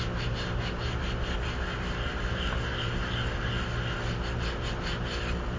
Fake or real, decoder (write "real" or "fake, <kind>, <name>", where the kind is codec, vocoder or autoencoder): real